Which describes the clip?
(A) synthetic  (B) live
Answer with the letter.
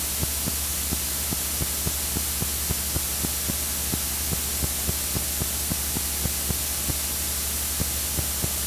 B